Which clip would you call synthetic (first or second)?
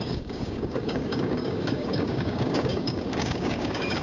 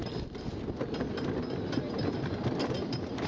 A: first